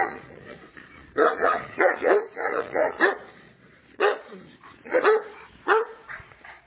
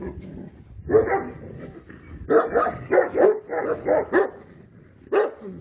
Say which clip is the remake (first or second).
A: first